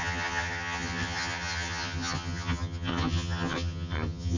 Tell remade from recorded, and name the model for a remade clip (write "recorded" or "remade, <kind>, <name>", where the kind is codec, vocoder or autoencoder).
remade, vocoder, HiFi-GAN